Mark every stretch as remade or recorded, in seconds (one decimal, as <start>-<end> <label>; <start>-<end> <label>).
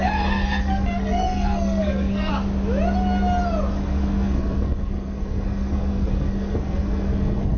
0.0-2.3 remade; 2.3-3.7 recorded; 3.7-7.6 remade